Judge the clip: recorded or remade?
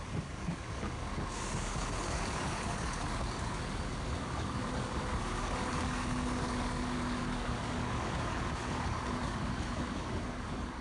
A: remade